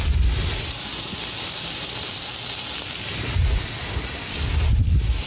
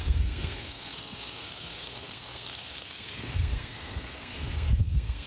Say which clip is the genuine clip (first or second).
first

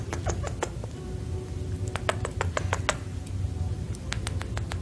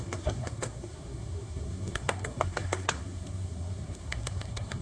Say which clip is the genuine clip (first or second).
first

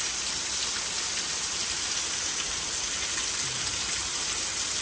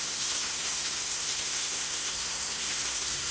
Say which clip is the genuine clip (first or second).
first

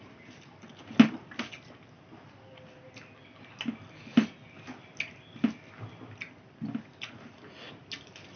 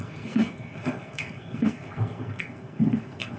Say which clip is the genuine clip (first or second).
first